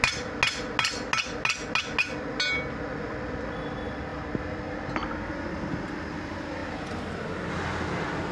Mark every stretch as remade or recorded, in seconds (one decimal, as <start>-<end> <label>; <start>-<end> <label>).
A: 0.0-8.3 recorded